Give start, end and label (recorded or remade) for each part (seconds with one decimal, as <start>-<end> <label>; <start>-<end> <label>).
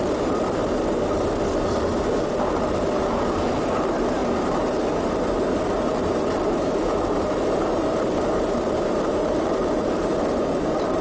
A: 0.0-0.6 remade; 0.6-2.0 recorded; 2.0-11.0 remade